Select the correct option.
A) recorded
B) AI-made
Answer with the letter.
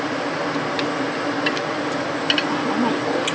A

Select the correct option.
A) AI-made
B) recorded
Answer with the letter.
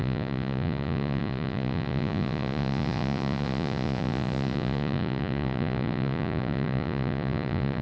A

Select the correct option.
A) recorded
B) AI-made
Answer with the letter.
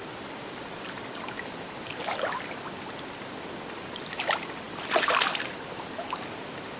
A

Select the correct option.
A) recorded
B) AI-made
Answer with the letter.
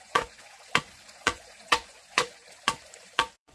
B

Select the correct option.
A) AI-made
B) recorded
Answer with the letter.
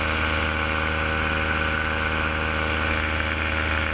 B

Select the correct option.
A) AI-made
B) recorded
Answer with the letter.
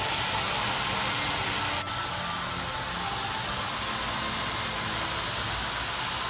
B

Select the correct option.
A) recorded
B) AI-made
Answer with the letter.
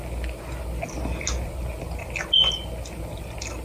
A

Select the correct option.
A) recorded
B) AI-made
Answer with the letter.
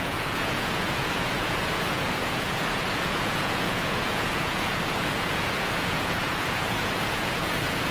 B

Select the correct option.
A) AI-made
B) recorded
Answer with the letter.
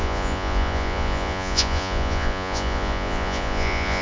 A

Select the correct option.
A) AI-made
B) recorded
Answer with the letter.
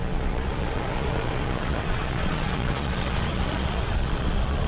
A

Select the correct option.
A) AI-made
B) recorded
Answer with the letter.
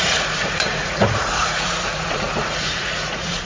A